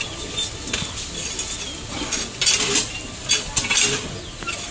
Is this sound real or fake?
real